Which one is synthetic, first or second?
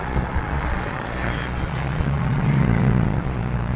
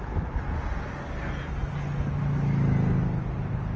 first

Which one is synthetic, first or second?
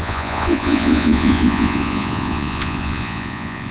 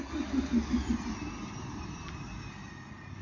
first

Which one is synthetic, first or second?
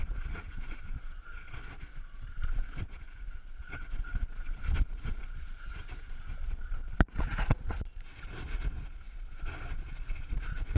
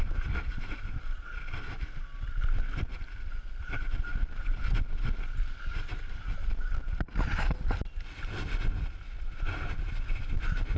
first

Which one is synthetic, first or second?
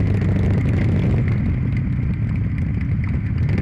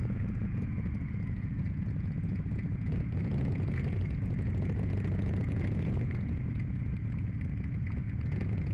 second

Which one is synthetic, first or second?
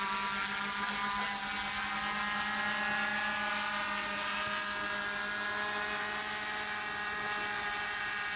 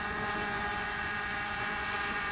second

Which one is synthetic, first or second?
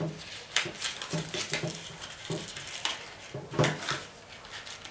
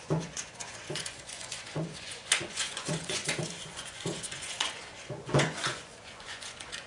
second